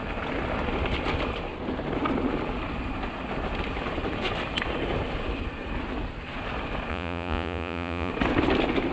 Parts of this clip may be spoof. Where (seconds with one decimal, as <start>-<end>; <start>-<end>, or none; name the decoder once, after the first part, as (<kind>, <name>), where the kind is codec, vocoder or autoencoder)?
6.9-8.1 (vocoder, Vocos)